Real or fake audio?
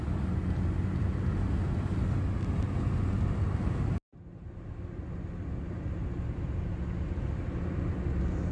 real